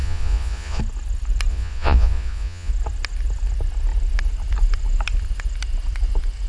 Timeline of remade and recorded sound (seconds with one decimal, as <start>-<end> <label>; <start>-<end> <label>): 0.0-0.8 remade; 0.8-1.5 recorded; 1.5-2.7 remade; 2.7-6.5 recorded